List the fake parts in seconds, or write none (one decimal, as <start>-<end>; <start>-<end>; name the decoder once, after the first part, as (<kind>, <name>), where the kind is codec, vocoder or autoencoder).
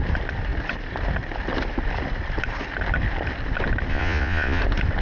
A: 3.9-4.6 (vocoder, Vocos)